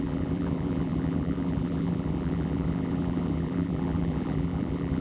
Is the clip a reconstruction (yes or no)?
yes